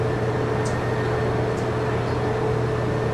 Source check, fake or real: real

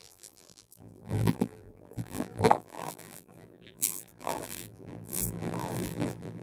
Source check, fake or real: fake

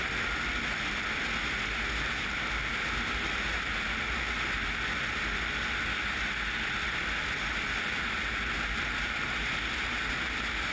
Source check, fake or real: real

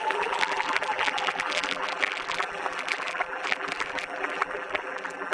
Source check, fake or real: fake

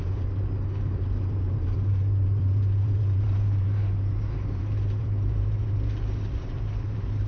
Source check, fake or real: fake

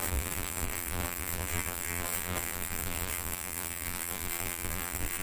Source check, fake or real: fake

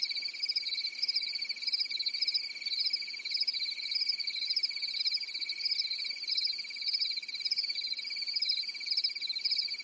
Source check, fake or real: real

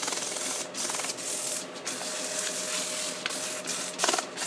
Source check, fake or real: real